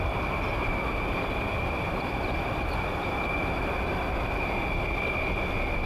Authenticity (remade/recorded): recorded